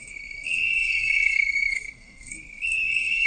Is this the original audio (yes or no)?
no